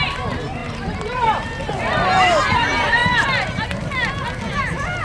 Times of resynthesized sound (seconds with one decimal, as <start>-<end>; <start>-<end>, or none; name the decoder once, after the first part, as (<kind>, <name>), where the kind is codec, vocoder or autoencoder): 0.0-3.0 (vocoder, BigVGAN v2); 4.5-5.0